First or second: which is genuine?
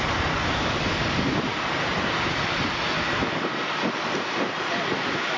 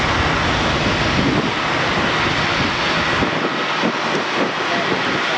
second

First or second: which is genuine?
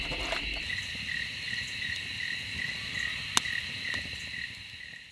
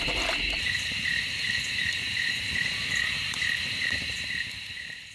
first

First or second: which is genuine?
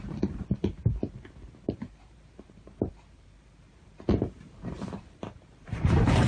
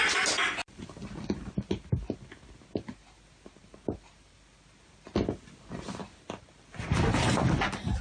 second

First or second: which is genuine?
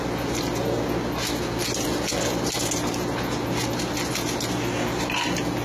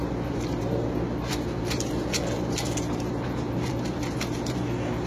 first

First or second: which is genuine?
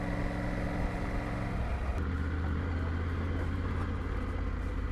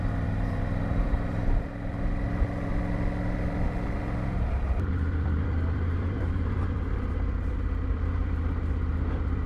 first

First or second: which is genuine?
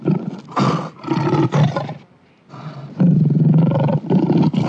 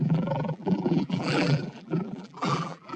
first